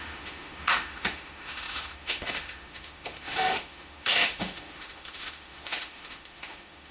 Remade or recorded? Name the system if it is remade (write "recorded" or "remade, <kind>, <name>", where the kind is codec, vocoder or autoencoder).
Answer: remade, autoencoder, DAC-VAE